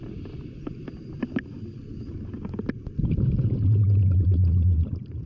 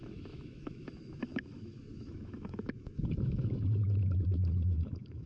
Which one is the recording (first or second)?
first